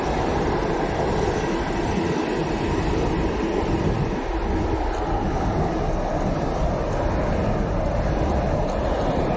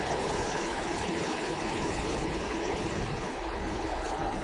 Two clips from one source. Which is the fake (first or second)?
second